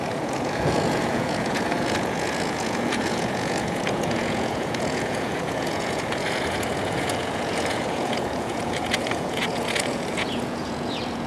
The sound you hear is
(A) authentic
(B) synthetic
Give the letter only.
B